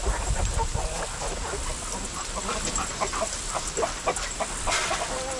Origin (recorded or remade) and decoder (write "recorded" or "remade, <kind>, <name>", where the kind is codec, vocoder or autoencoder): recorded